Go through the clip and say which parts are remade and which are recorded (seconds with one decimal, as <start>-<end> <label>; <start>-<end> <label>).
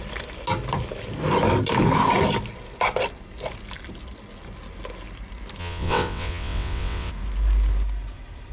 0.0-5.6 recorded; 5.6-7.1 remade; 7.1-8.5 recorded